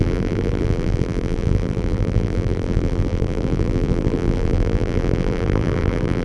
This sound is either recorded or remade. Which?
remade